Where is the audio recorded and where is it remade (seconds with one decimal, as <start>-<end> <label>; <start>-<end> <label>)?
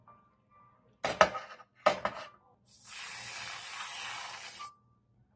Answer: 0.0-5.4 recorded